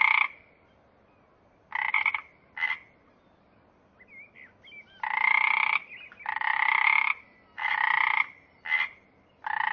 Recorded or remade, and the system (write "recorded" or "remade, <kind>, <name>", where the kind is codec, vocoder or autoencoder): recorded